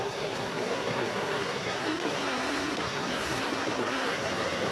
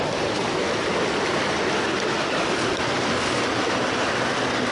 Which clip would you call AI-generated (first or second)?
first